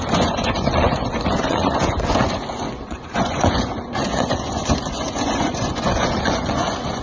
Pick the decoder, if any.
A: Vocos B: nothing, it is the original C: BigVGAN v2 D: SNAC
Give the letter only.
A